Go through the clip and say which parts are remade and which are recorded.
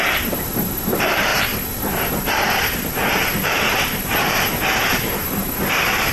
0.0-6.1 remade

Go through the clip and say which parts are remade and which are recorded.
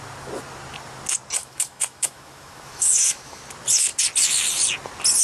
0.0-1.4 recorded; 1.4-3.4 remade; 3.4-5.2 recorded